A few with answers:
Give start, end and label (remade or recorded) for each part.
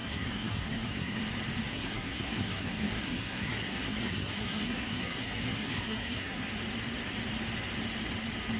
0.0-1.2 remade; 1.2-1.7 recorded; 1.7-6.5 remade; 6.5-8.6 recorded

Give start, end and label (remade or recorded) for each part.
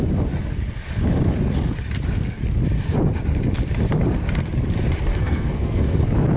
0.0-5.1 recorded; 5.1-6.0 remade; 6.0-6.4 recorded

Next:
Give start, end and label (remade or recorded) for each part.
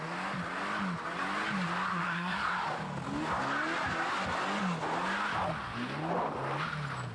0.0-1.9 recorded; 1.9-2.5 remade; 2.5-7.1 recorded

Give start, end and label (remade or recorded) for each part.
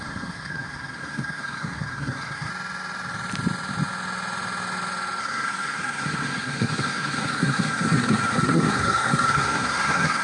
0.0-2.5 remade; 2.5-5.2 recorded; 5.2-10.2 remade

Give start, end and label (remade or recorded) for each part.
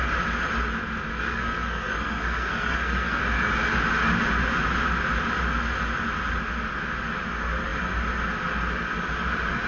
0.0-1.1 recorded; 1.1-3.2 remade; 3.2-9.7 recorded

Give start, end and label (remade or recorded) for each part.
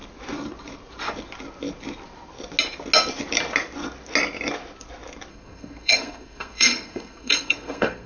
0.0-5.3 recorded; 5.3-8.1 remade